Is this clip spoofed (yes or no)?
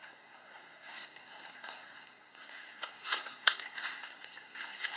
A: yes